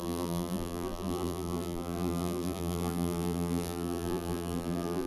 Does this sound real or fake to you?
fake